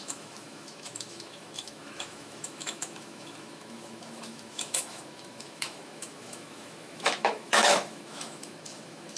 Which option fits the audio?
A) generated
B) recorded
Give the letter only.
A